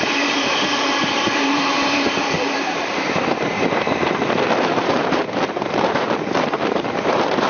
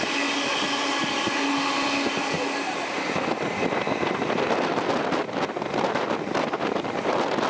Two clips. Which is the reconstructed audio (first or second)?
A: first